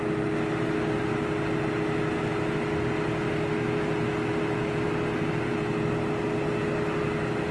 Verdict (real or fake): real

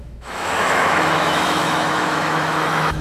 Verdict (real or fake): fake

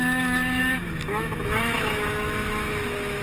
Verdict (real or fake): fake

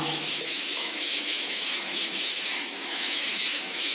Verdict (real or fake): fake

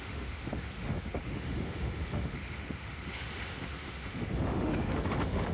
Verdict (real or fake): fake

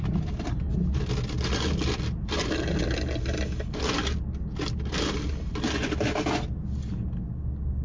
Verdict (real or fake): real